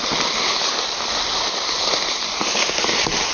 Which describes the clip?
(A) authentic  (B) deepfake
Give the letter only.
A